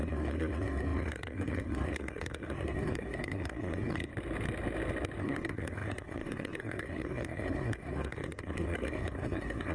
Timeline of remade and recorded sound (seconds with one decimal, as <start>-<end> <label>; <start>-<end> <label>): 0.0-4.1 remade; 4.1-5.2 recorded; 5.2-9.7 remade